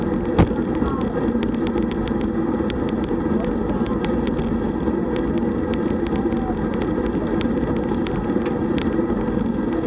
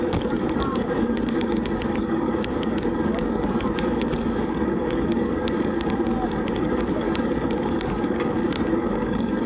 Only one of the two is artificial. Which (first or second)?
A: second